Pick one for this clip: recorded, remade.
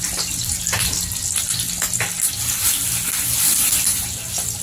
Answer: recorded